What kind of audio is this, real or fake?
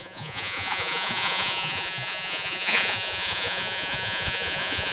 fake